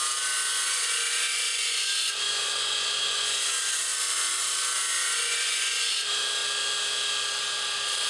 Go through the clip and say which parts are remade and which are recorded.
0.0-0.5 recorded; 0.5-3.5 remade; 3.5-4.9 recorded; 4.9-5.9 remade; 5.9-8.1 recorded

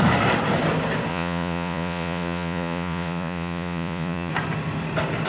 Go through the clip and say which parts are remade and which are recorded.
0.0-1.1 recorded; 1.1-4.3 remade; 4.3-5.3 recorded

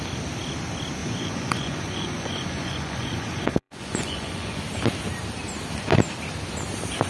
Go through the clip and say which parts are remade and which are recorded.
0.0-1.0 recorded; 1.0-4.6 remade; 4.6-7.1 recorded

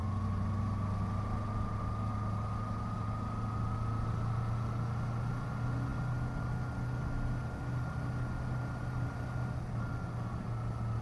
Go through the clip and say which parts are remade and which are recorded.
0.0-11.0 recorded

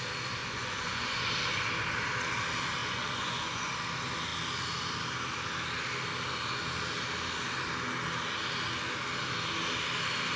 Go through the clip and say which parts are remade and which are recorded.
0.0-0.4 recorded; 0.4-1.3 remade; 1.3-2.8 recorded; 2.8-3.7 remade; 3.7-10.4 recorded

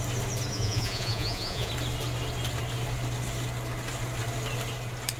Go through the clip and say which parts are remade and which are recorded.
0.0-0.5 recorded; 0.5-1.7 remade; 1.7-5.2 recorded

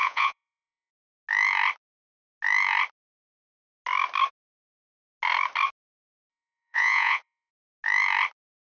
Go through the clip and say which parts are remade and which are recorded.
0.0-0.9 remade; 0.9-6.3 recorded; 6.3-7.5 remade; 7.5-8.7 recorded